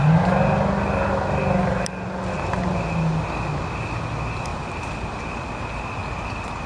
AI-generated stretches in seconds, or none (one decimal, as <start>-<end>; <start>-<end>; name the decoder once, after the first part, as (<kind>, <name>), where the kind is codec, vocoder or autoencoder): 4.5-5.3 (vocoder, BigVGAN v2)